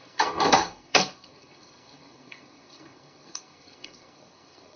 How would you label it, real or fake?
fake